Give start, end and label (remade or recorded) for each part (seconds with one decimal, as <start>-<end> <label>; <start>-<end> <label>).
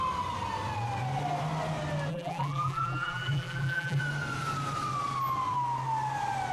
0.0-2.1 recorded; 2.1-4.0 remade; 4.0-6.5 recorded